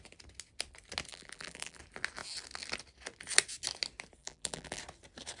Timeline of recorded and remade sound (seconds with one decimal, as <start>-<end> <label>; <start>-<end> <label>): 0.0-1.1 recorded; 1.1-1.8 remade; 1.8-4.2 recorded; 4.2-4.8 remade; 4.8-5.4 recorded